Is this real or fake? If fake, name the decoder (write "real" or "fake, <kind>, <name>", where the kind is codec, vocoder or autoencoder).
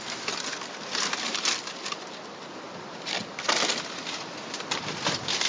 real